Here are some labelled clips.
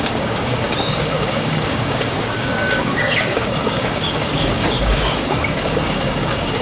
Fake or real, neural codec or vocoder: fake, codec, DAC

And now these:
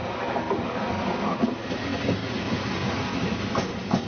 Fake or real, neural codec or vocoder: real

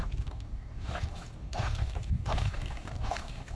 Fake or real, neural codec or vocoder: fake, codec, DAC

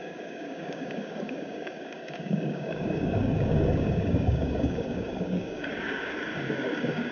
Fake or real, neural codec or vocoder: fake, codec, DAC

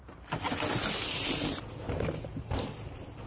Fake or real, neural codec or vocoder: real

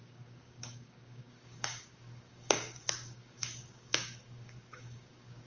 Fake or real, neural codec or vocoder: fake, codec, DAC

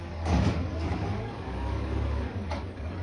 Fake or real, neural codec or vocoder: fake, codec, DAC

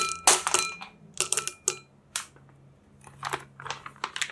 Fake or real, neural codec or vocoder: real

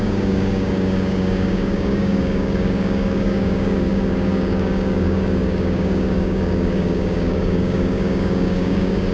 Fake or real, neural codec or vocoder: fake, codec, DAC